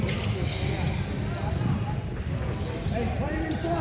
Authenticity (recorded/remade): recorded